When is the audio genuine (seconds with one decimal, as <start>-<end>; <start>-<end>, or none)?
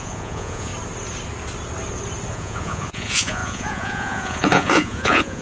0.7-2.3